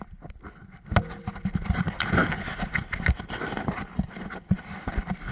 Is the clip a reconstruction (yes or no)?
no